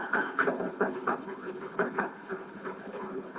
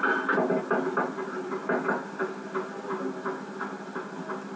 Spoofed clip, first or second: first